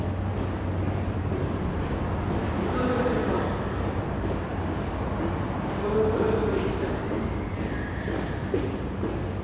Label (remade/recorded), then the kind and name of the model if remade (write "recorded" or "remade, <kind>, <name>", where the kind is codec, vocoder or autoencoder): recorded